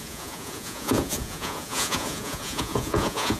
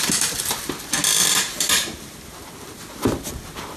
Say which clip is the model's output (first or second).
first